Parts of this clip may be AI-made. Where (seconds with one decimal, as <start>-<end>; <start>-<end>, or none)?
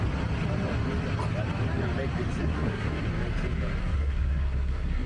2.4-3.0; 3.8-5.1